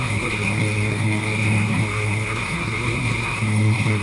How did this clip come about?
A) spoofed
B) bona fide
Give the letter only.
A